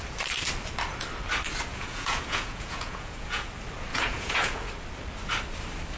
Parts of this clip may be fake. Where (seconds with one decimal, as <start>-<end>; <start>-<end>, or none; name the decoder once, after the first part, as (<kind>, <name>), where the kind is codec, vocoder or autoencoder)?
1.7-3.5 (vocoder, Vocos); 3.9-4.6